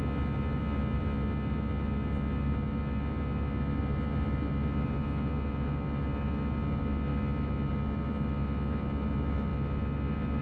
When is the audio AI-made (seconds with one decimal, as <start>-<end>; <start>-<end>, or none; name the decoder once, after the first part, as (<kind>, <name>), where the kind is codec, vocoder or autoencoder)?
none